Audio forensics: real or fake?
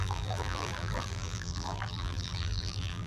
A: fake